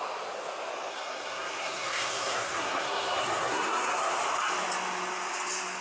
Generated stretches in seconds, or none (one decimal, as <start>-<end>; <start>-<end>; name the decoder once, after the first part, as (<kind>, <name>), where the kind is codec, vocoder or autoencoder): 0.9-4.1 (codec, SNAC)